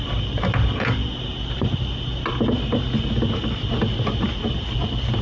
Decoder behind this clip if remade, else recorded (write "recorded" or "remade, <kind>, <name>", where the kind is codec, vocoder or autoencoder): recorded